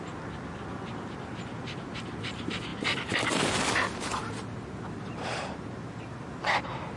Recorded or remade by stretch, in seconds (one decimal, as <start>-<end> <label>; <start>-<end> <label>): 0.0-7.0 recorded

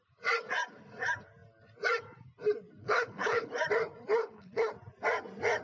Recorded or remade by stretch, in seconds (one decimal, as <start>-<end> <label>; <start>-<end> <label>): 0.0-2.8 recorded; 2.8-3.5 remade; 3.5-4.2 recorded; 4.2-4.7 remade; 4.7-5.6 recorded

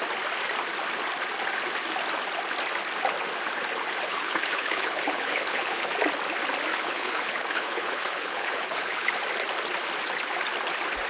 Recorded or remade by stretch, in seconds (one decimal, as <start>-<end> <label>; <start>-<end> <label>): 0.0-4.1 recorded; 4.1-5.9 remade; 5.9-6.7 recorded; 6.7-9.1 remade; 9.1-11.1 recorded